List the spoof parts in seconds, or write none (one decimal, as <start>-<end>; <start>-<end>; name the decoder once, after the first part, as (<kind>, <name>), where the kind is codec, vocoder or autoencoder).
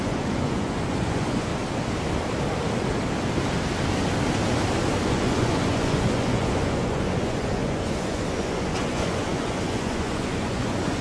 0.0-1.5 (vocoder, Vocos); 5.0-11.0